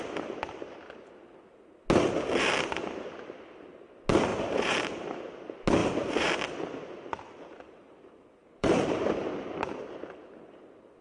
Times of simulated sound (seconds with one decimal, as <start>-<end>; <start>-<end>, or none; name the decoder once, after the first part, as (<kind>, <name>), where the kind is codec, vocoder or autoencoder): 4.3-5.2 (vocoder, BigVGAN v2); 5.8-6.3; 8.4-10.2